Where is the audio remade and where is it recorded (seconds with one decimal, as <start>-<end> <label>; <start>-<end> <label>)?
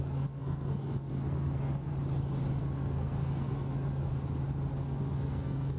0.0-1.9 remade; 1.9-2.6 recorded; 2.6-4.1 remade; 4.1-4.7 recorded; 4.7-5.8 remade